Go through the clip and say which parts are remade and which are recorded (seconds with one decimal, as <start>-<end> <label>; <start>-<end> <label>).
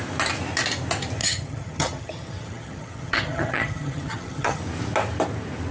0.0-1.2 recorded; 1.2-4.6 remade; 4.6-5.7 recorded